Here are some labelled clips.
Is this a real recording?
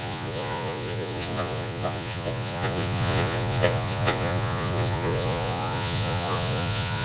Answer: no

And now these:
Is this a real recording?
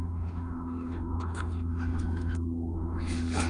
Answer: no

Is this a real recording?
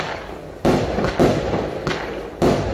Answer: yes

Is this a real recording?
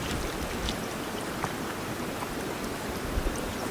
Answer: no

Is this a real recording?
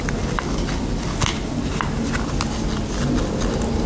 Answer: yes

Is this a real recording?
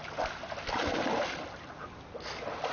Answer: yes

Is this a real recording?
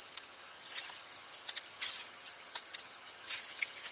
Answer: no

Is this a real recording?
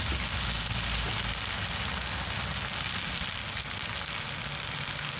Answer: yes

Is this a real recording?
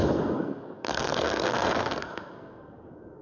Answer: no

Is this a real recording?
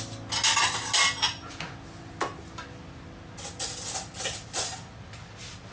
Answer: yes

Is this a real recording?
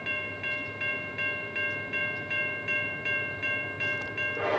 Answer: no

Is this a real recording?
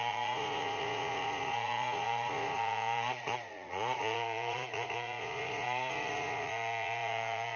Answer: no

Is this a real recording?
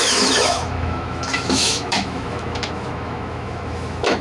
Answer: no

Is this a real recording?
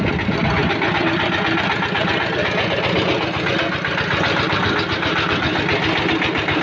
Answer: yes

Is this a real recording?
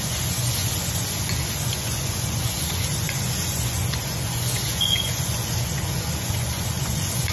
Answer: no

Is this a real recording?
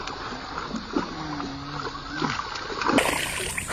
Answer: yes